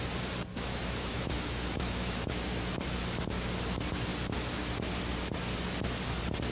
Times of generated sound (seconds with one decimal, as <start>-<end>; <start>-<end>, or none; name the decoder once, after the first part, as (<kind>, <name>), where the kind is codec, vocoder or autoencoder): 0.5-2.7 (autoencoder, DAC-VAE)